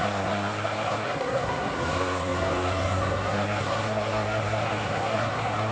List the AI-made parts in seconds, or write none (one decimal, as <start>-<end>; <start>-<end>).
0.0-5.7